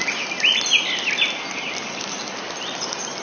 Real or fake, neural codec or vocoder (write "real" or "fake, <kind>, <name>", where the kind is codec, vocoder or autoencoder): real